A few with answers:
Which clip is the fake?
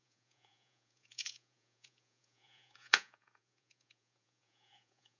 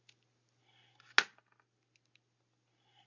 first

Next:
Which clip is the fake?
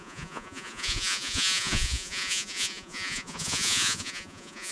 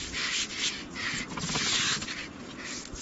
first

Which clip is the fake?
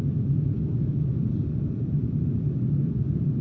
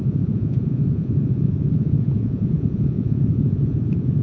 second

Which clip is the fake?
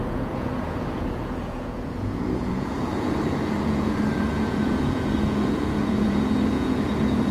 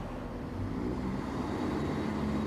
first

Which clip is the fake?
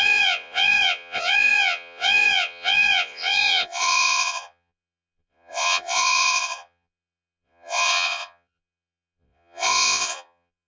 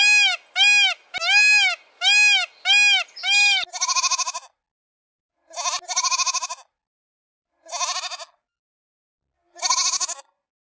first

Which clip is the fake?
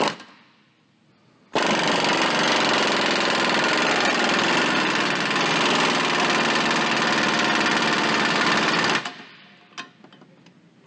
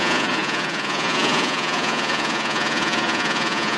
second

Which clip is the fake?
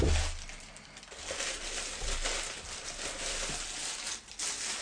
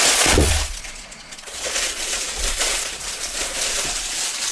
second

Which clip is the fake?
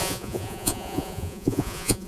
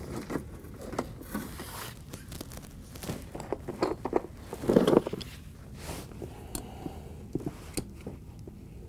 first